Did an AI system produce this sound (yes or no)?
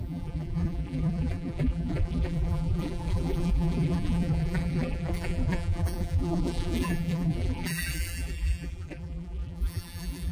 yes